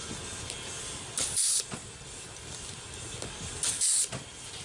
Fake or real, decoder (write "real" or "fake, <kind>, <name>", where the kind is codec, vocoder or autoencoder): real